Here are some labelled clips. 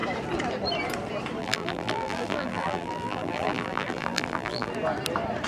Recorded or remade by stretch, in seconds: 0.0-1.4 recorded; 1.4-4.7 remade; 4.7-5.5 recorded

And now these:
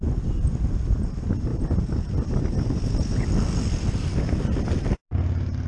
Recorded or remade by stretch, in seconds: 0.0-5.7 recorded

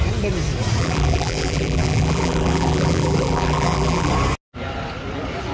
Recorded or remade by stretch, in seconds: 0.0-0.8 recorded; 0.8-4.1 remade; 4.1-5.5 recorded

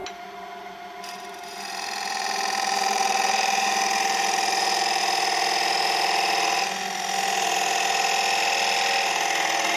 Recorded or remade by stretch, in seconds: 0.0-5.0 remade; 5.0-9.8 recorded

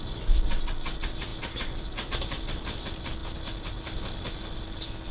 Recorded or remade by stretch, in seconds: 0.0-3.2 remade; 3.2-5.1 recorded

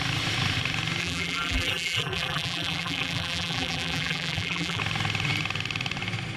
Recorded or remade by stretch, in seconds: 0.0-1.0 recorded; 1.0-4.8 remade; 4.8-6.4 recorded

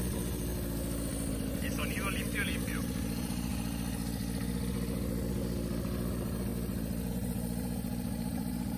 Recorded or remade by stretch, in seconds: 0.0-0.5 remade; 0.5-1.3 recorded; 1.3-3.5 remade; 3.5-6.1 recorded; 6.1-6.5 remade; 6.5-7.1 recorded; 7.1-8.8 remade